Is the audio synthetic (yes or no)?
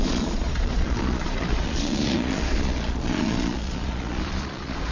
yes